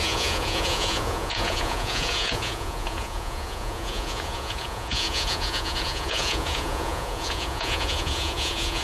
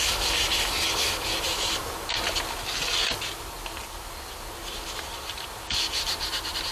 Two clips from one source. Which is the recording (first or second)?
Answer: second